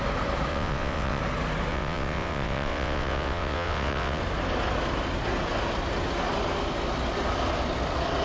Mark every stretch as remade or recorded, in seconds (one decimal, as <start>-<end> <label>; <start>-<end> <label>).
0.0-0.5 recorded; 0.5-1.2 remade; 1.2-1.7 recorded; 1.7-4.2 remade; 4.2-8.2 recorded